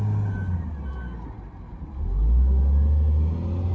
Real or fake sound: real